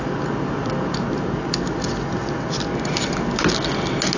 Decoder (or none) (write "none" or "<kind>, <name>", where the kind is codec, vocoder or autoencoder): none